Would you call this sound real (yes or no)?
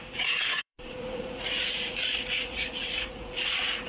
no